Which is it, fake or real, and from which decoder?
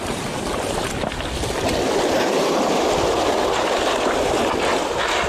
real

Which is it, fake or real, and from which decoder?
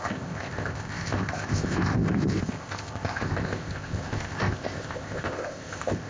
fake, codec, ZipCodec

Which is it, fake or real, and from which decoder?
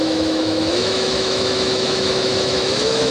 fake, autoencoder, DAC-VAE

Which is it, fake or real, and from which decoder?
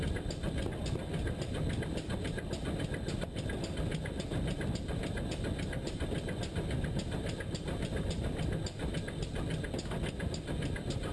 real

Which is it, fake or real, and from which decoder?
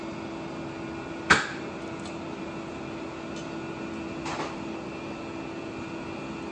real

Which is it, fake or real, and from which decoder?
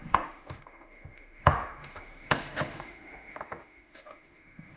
fake, autoencoder, DAC-VAE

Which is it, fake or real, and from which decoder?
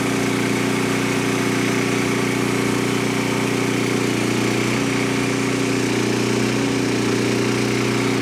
real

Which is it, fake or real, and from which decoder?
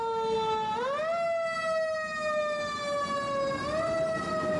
real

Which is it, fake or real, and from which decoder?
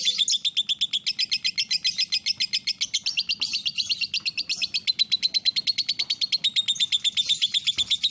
real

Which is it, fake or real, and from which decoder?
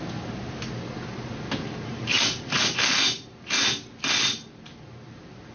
real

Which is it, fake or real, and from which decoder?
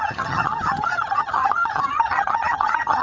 fake, vocoder, HiFi-GAN